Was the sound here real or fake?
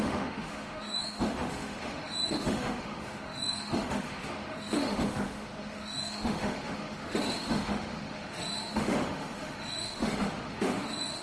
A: fake